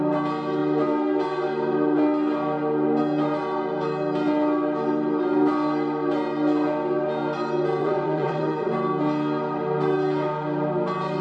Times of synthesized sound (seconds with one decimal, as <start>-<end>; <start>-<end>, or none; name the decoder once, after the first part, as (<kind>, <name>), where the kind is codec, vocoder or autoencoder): 7.8-8.7 (vocoder, WaveNeXt)